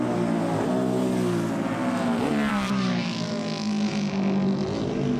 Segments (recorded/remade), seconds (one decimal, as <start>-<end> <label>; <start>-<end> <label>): 0.0-2.5 recorded; 2.5-3.3 remade; 3.3-5.2 recorded